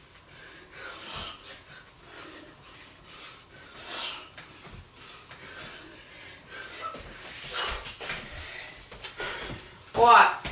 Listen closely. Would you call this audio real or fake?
real